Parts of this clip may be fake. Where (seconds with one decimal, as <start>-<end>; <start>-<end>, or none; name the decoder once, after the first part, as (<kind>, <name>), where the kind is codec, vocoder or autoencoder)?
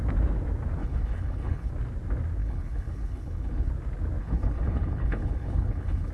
0.8-1.7 (codec, HILCodec); 2.4-3.7; 4.2-6.1